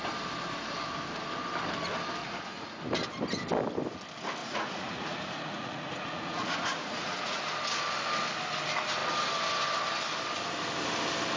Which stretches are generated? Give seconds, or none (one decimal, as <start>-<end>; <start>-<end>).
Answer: 2.2-2.8; 4.4-7.4